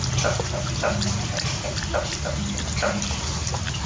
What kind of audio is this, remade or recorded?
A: recorded